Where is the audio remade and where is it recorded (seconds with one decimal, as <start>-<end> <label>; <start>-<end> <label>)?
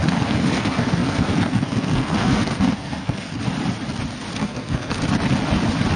0.0-3.4 remade; 3.4-4.4 recorded; 4.4-5.0 remade; 5.0-6.0 recorded